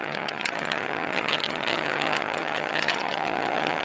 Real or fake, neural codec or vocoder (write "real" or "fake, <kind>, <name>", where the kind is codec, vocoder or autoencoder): fake, vocoder, HiFi-GAN